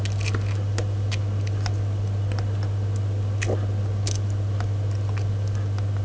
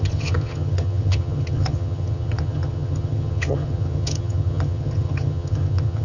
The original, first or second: first